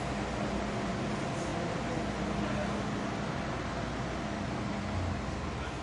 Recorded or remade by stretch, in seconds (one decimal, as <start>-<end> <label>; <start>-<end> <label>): 0.0-5.8 recorded